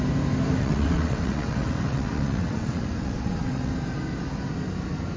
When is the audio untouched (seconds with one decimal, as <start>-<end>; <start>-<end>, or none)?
0.0-0.6; 3.7-5.2